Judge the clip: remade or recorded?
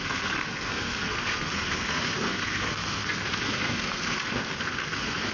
remade